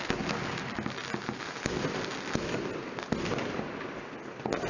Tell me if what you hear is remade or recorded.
recorded